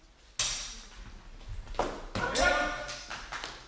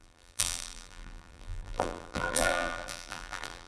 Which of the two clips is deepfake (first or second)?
second